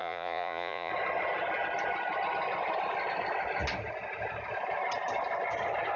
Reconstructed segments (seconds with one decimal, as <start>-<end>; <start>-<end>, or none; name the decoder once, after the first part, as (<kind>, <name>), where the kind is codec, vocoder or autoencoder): 0.0-0.9 (vocoder, Vocos)